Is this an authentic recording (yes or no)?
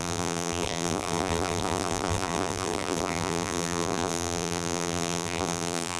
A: no